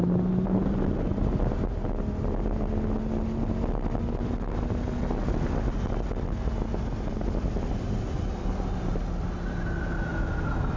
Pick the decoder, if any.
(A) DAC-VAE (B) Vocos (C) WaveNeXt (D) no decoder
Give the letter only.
D